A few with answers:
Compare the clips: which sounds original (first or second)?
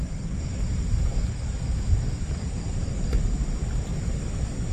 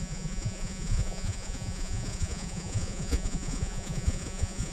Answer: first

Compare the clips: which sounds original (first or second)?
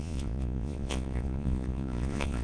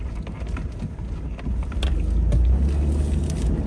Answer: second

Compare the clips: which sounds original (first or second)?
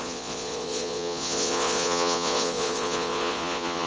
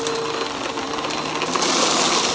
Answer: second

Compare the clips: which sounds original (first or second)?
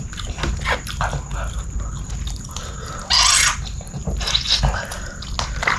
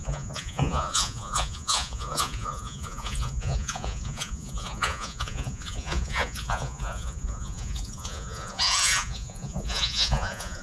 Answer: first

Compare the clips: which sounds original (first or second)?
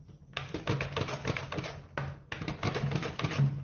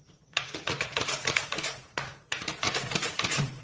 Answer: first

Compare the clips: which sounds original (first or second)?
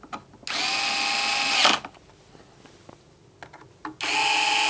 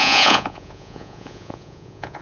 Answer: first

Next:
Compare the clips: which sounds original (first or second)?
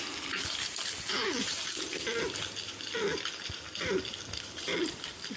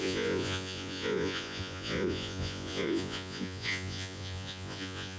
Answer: first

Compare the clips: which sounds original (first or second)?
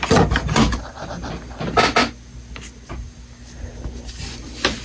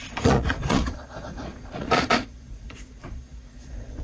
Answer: first